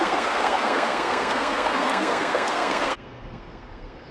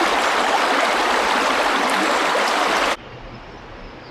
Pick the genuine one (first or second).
second